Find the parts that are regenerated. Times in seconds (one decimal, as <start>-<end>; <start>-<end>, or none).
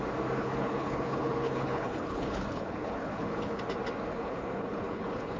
0.4-3.6; 4.1-5.4